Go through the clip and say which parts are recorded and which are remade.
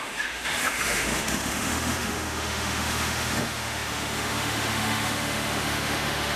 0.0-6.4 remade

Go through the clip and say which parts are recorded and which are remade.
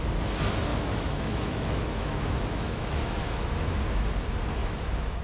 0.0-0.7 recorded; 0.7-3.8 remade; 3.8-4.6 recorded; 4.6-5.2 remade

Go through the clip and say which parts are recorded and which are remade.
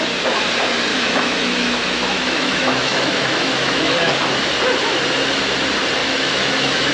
0.0-0.9 recorded; 0.9-4.1 remade; 4.1-6.0 recorded; 6.0-6.9 remade